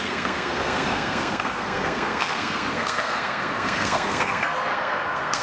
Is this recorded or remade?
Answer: remade